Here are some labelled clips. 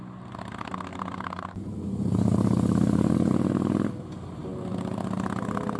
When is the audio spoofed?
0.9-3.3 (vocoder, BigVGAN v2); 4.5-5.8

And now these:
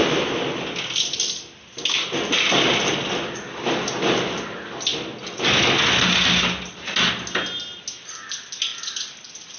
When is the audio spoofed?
none

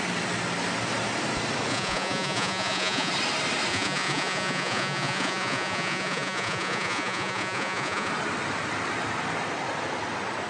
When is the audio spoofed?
1.7-3.1 (vocoder, Vocos); 3.7-8.1